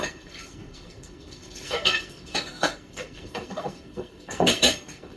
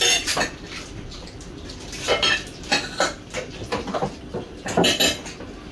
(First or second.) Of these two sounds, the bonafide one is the second